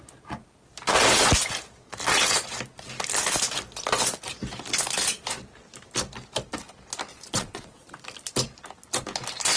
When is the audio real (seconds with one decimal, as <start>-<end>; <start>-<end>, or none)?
0.0-7.1; 7.9-9.6